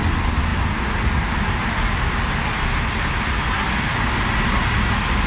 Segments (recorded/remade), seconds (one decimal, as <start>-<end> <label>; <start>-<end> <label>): 0.0-5.3 recorded